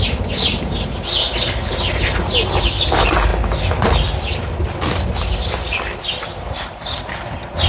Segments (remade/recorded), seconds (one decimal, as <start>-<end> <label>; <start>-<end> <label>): 0.0-7.7 recorded